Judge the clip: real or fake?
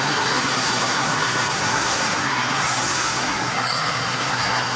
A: fake